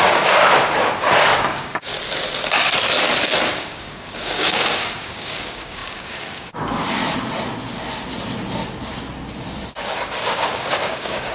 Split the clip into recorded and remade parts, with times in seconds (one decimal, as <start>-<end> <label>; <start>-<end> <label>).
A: 0.0-0.4 remade; 0.4-1.2 recorded; 1.2-1.9 remade; 1.9-3.5 recorded; 3.5-7.0 remade; 7.0-9.8 recorded; 9.8-11.3 remade